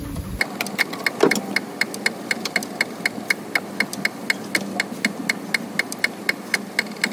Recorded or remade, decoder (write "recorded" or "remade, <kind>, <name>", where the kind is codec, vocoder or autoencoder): recorded